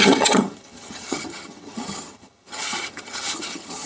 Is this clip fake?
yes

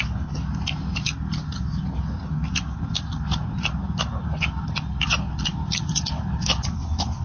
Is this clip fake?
no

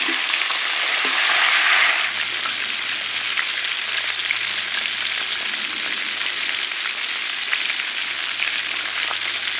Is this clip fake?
no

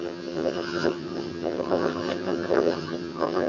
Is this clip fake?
yes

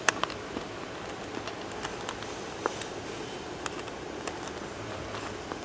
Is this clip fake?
no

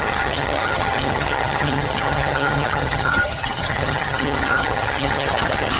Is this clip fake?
yes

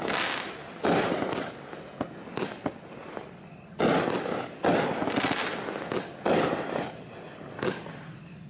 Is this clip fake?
no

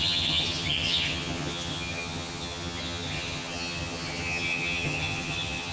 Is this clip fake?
yes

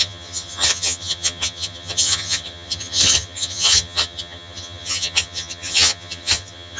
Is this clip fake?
yes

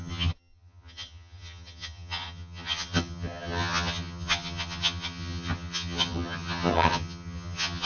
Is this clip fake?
yes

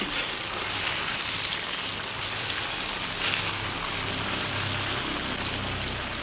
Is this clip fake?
no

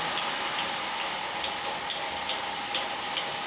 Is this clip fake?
no